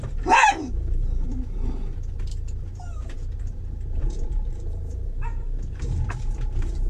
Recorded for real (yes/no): no